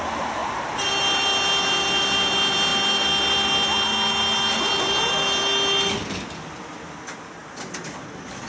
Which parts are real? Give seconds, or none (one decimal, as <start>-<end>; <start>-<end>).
0.0-8.5